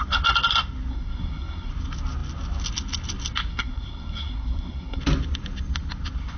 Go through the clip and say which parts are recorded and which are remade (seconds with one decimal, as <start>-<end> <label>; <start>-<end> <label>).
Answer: 0.0-0.9 recorded; 0.9-1.7 remade; 1.7-3.5 recorded; 3.5-5.0 remade; 5.0-6.4 recorded